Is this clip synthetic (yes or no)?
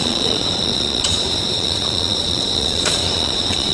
yes